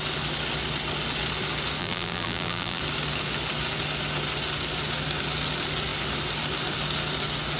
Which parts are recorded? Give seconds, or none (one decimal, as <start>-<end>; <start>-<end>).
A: 0.0-1.8; 2.8-7.6